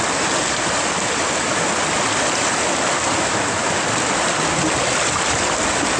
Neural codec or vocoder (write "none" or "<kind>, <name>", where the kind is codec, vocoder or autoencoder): none